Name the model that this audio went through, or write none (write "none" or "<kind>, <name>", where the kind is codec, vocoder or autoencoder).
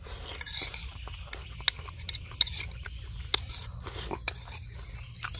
none